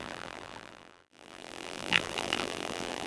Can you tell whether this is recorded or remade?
remade